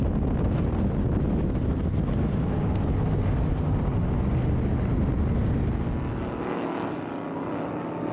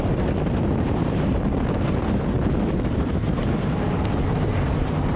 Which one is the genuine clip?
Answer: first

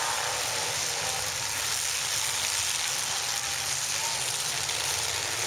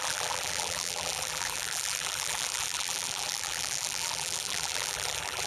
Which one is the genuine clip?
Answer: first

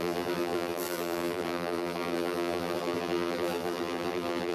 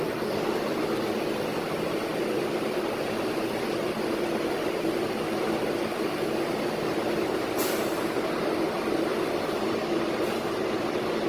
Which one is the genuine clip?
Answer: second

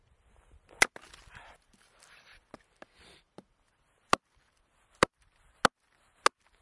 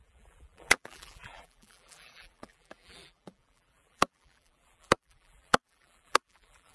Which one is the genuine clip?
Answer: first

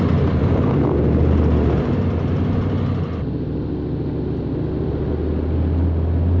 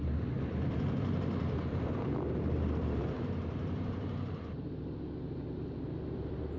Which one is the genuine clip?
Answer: first